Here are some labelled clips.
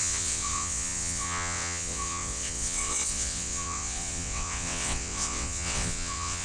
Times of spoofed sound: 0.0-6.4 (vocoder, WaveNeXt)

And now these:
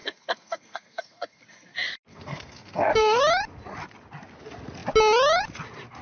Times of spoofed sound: 0.0-1.4 (codec, SNAC); 2.1-3.2

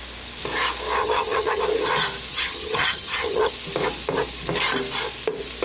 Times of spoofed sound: 1.0-1.6 (vocoder, HiFi-GAN); 2.3-3.5

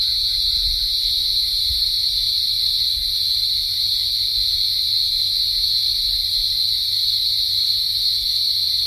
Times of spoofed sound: 1.7-2.4 (vocoder, BigVGAN v2)

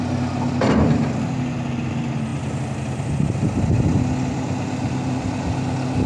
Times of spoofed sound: none

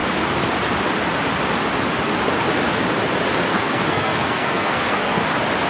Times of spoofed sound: 3.5-5.2 (codec, SNAC)